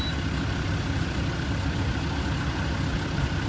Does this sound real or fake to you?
real